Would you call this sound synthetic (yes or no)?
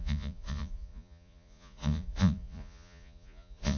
yes